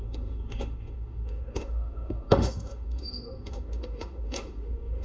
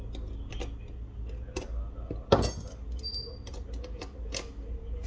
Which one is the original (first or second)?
second